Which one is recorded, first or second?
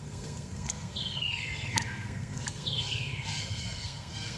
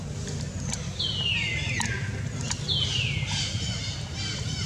second